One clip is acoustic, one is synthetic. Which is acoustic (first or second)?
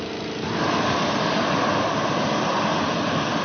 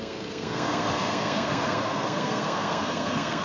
first